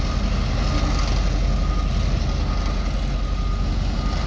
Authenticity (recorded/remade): recorded